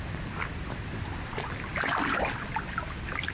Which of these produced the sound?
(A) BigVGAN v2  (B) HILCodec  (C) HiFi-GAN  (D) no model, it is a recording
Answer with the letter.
D